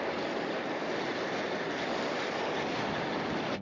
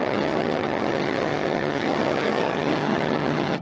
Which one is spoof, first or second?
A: second